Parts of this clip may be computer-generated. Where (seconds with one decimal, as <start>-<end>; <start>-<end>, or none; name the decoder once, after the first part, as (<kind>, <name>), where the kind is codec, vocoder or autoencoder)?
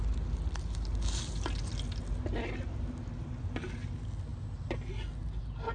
none